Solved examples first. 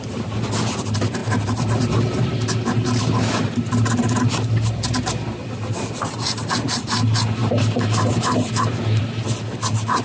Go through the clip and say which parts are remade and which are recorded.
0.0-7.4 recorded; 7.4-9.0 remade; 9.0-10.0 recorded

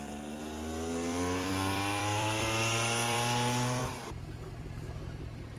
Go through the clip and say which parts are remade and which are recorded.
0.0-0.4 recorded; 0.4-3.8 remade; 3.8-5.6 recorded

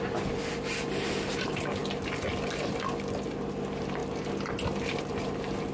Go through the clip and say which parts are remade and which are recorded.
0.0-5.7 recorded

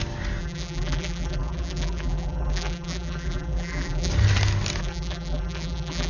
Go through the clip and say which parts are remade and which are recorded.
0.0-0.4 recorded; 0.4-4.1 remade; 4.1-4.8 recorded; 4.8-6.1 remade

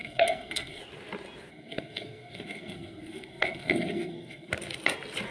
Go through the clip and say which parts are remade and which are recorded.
0.0-0.8 remade; 0.8-1.5 recorded; 1.5-4.5 remade; 4.5-5.3 recorded